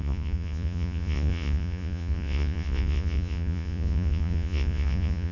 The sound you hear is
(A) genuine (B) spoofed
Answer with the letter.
B